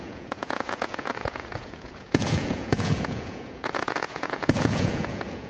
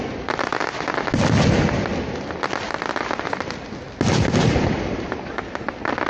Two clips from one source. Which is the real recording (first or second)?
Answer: second